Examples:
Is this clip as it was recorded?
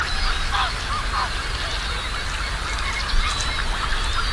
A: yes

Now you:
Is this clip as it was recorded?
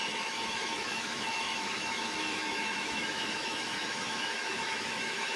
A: no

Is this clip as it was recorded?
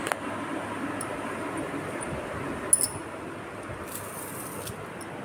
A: yes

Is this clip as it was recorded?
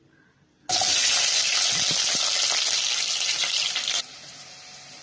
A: yes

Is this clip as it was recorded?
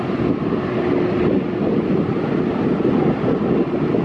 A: yes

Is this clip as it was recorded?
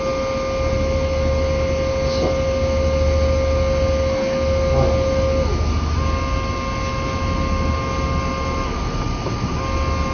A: yes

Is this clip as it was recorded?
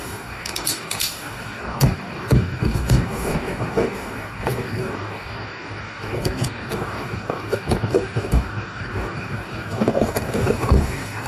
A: no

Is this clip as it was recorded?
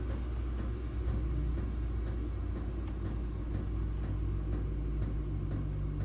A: yes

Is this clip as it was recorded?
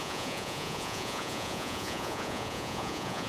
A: no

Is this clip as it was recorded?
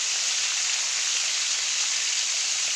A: yes